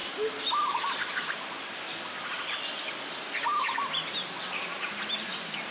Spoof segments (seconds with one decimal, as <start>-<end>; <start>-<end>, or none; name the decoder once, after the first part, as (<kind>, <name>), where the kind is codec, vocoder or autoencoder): 4.7-5.7 (vocoder, BigVGAN v2)

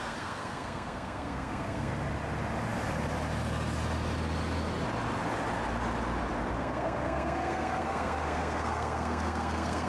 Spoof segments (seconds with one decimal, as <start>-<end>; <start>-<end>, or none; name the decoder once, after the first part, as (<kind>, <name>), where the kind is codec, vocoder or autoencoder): 0.0-1.9 (codec, SNAC); 6.6-9.9

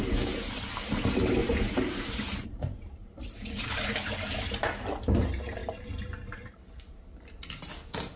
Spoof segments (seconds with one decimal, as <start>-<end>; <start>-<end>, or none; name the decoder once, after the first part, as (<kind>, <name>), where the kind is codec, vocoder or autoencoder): 1.4-3.8 (vocoder, BigVGAN v2)

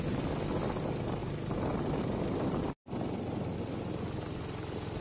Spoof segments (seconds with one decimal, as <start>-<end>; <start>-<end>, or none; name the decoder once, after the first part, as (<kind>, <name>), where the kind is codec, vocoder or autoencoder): none

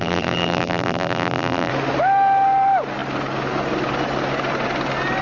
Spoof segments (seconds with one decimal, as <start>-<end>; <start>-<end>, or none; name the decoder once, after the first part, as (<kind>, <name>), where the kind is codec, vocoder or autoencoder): 0.0-1.7 (vocoder, BigVGAN v2)

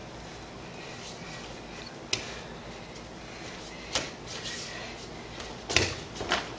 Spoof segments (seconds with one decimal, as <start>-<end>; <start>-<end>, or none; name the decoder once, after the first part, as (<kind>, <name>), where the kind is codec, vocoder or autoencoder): none

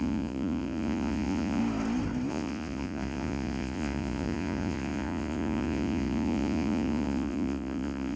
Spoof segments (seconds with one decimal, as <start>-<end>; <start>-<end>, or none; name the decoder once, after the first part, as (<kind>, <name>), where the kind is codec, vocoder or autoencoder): 0.0-1.6 (vocoder, Vocos); 2.3-8.2

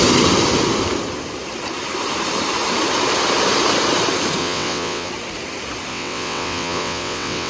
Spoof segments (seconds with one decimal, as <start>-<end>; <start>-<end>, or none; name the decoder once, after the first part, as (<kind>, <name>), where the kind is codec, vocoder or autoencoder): 4.4-5.1 (vocoder, WaveNeXt); 5.9-7.5